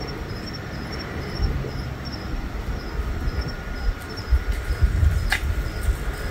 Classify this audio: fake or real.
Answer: real